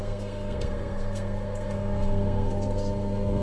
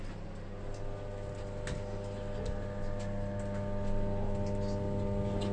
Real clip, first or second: second